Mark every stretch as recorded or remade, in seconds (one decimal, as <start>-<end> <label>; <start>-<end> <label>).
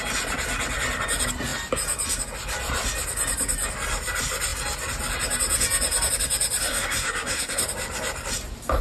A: 0.0-6.6 recorded; 6.6-7.6 remade; 7.6-8.8 recorded